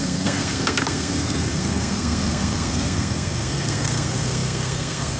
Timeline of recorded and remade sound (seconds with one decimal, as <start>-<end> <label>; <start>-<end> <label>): 0.0-5.2 remade